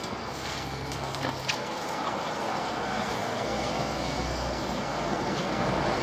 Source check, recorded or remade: remade